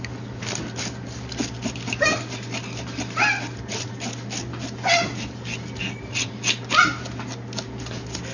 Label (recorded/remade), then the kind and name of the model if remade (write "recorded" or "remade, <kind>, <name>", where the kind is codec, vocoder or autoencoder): recorded